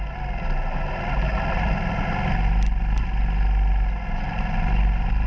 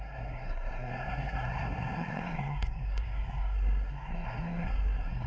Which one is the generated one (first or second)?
second